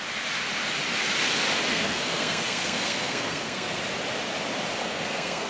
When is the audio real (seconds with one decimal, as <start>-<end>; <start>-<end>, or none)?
0.0-1.7; 3.8-4.8